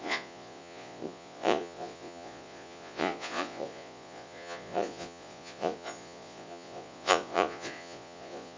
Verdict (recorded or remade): remade